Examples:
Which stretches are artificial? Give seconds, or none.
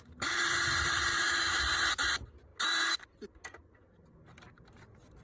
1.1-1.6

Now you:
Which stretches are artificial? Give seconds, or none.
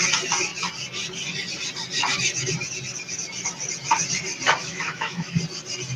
4.6-5.4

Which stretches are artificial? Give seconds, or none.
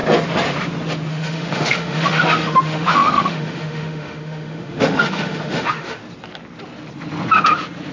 1.1-6.0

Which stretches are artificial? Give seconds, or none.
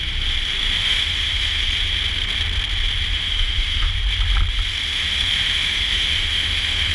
0.6-1.6; 3.1-3.9; 4.9-6.9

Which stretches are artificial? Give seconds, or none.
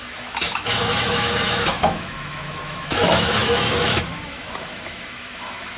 0.0-5.8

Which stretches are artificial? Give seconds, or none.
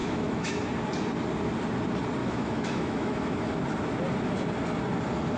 0.0-0.6; 2.2-3.6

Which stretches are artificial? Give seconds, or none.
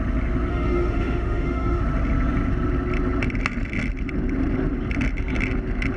0.5-1.8